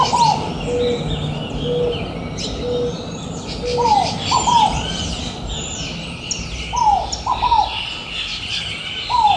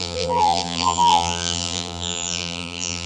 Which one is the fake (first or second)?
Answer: second